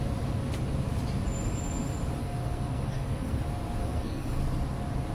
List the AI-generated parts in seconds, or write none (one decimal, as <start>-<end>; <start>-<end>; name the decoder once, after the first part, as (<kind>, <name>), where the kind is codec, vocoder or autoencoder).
2.2-3.4 (codec, SNAC); 3.8-4.4